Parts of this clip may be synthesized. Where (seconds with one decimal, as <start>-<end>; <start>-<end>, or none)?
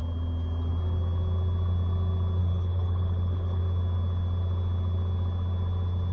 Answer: 2.4-3.6